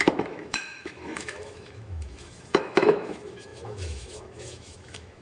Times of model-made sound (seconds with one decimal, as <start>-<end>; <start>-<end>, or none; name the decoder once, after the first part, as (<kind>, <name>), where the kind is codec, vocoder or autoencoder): 0.0-5.2 (autoencoder, DAC-VAE)